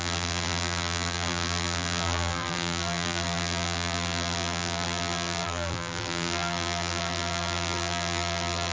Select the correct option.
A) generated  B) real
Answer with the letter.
A